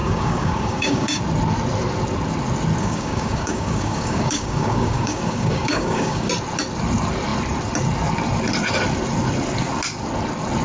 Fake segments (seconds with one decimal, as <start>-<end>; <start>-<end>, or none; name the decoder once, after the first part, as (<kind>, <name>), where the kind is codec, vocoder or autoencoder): 0.0-1.2 (codec, DAC); 2.8-6.3